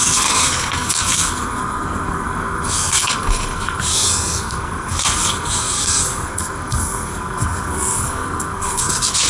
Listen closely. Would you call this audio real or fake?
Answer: fake